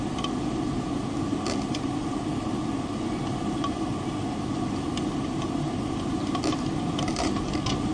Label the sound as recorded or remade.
recorded